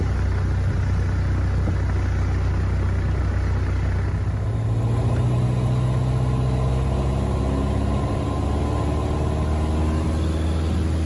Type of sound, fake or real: real